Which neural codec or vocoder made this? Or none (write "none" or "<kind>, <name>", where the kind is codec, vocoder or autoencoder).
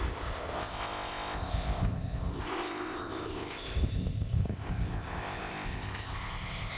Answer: codec, ZipCodec